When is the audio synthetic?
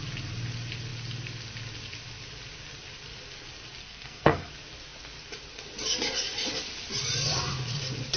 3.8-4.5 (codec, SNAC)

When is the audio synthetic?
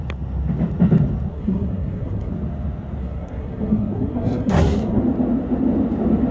1.3-2.3 (codec, SNAC); 3.0-5.0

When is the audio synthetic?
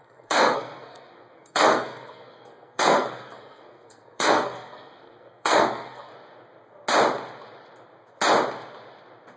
0.0-6.1 (codec, SNAC)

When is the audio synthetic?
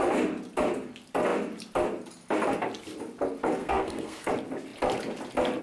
3.6-4.3 (codec, SNAC)